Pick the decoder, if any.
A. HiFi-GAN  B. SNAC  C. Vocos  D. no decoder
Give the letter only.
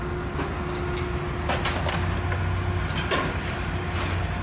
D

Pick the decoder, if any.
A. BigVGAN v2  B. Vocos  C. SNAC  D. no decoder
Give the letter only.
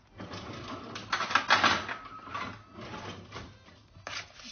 D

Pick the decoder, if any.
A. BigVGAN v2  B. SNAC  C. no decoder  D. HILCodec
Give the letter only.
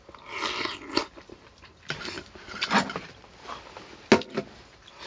C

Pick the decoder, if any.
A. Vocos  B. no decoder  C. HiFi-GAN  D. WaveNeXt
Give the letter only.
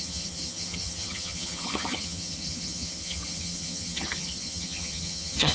C